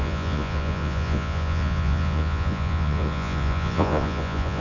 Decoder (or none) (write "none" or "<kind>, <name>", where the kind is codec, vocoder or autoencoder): vocoder, Vocos